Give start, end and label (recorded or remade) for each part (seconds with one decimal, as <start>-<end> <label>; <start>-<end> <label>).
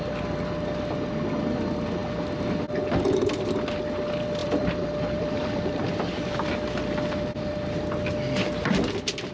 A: 0.0-4.4 recorded; 4.4-6.5 remade; 6.5-9.3 recorded